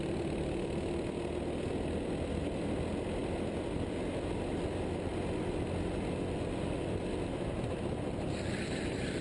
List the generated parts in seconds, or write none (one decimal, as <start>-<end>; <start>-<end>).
none